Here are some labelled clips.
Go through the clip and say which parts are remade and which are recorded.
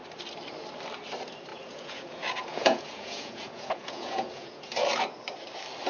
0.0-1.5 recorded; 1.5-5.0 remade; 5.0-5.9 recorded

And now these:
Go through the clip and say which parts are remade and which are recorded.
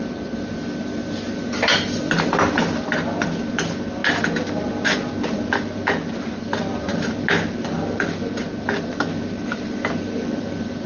0.0-10.9 recorded